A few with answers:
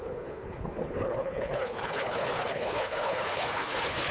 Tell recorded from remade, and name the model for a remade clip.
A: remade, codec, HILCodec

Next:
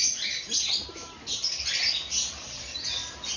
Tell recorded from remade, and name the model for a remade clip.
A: recorded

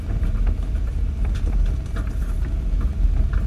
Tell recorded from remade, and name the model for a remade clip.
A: recorded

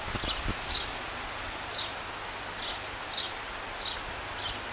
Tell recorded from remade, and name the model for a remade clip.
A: recorded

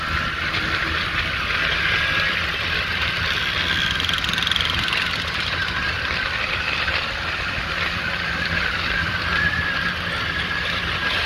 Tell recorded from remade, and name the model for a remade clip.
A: remade, vocoder, BigVGAN v2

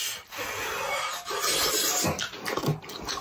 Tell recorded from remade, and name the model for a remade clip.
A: recorded